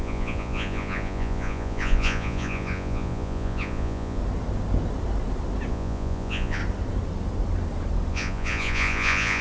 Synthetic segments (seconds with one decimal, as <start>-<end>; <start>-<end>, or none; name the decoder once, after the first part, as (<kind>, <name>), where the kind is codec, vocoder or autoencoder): 0.0-4.2 (vocoder, Vocos); 5.7-6.6; 8.1-9.4